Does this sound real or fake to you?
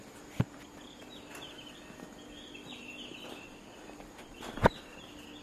real